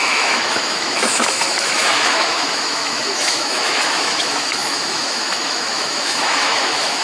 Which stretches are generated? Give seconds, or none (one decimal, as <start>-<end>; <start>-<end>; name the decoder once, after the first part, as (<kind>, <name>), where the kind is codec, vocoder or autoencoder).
0.0-7.0 (autoencoder, DAC-VAE)